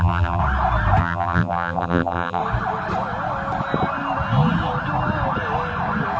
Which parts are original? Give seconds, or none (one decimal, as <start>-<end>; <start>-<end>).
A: 0.4-1.0; 2.4-6.2

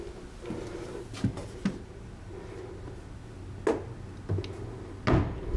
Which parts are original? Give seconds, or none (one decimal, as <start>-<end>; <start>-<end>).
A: 0.0-5.6

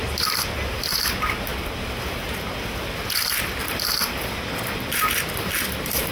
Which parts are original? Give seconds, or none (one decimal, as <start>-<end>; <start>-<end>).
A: 1.5-3.4